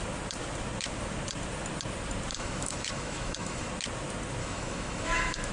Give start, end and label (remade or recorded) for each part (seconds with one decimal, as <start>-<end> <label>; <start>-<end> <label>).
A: 0.0-2.3 recorded; 2.3-3.7 remade; 3.7-4.4 recorded; 4.4-5.5 remade